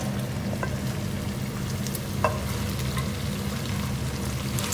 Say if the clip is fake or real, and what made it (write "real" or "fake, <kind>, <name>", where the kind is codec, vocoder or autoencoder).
real